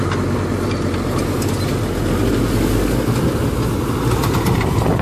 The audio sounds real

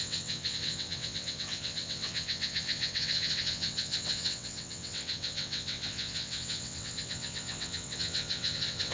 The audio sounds fake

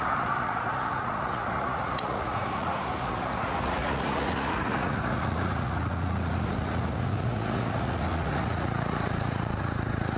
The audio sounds fake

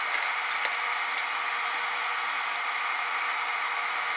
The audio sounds real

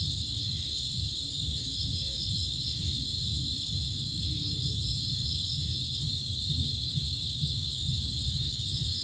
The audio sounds fake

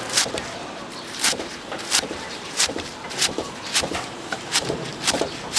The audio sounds fake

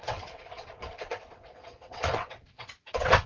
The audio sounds fake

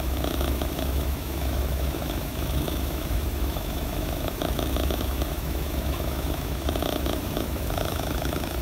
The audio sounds fake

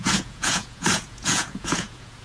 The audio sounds fake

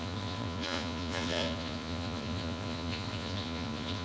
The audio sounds fake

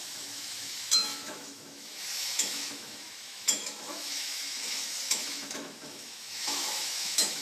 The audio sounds fake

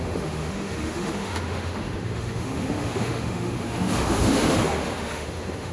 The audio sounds fake